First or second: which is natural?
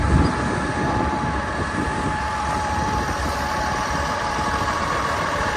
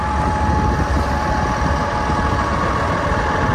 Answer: second